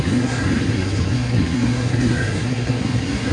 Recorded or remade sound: remade